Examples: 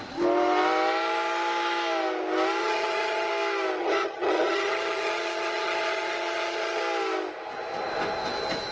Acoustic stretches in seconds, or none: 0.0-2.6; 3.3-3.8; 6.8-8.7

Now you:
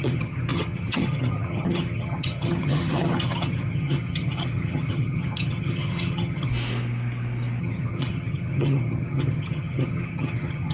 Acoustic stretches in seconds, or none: 6.5-7.6

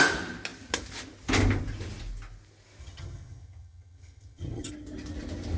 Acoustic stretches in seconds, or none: 0.0-2.8; 4.7-5.6

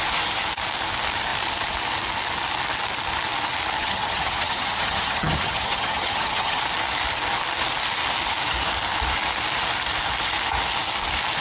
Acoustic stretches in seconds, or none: 0.0-3.8; 6.6-11.4